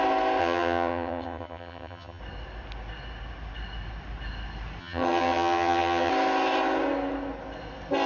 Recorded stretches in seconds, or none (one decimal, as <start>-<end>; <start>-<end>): 0.0-0.4; 2.2-4.8; 6.1-8.1